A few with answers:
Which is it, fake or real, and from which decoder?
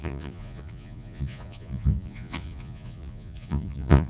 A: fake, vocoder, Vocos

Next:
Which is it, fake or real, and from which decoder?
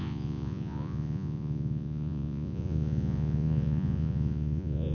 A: fake, vocoder, Vocos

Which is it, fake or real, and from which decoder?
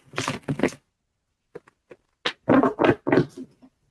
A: real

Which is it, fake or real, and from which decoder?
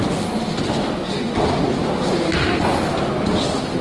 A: real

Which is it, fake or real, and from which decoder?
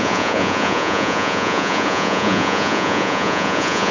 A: fake, vocoder, Vocos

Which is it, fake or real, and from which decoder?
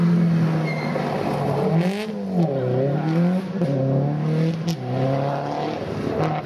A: real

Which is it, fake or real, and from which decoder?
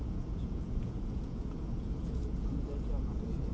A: fake, vocoder, Vocos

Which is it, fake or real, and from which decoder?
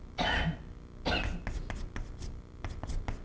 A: real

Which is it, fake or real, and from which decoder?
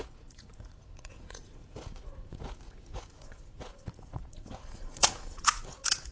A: fake, vocoder, Vocos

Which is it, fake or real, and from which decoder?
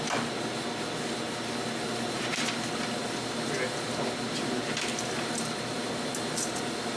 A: real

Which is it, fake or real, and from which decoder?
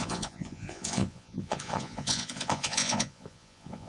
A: fake, vocoder, Vocos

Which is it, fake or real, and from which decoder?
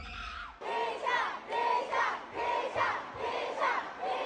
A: real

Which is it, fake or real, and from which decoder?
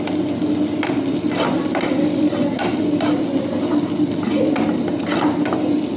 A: real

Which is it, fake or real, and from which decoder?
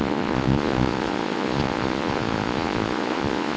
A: fake, vocoder, Vocos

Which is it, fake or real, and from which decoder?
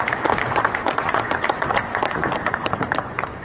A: fake, vocoder, Vocos